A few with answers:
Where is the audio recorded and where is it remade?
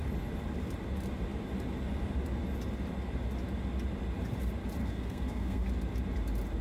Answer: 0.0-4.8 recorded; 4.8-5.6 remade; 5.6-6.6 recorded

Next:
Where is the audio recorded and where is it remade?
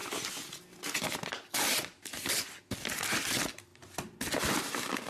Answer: 0.0-1.5 recorded; 1.5-2.2 remade; 2.2-3.3 recorded; 3.3-3.7 remade; 3.7-4.6 recorded; 4.6-5.1 remade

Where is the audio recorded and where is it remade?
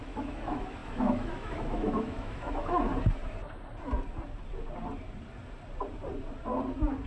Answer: 0.0-2.9 remade; 2.9-7.1 recorded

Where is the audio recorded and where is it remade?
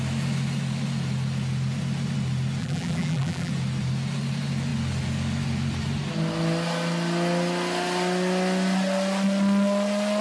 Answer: 0.0-2.6 recorded; 2.6-3.5 remade; 3.5-10.2 recorded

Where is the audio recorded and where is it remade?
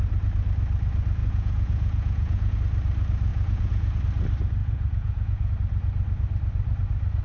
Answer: 0.0-1.2 recorded; 1.2-2.6 remade; 2.6-3.3 recorded; 3.3-4.0 remade; 4.0-4.6 recorded; 4.6-5.5 remade; 5.5-7.2 recorded